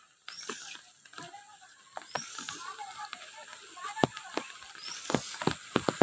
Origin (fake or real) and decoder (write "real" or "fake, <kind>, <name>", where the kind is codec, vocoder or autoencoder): real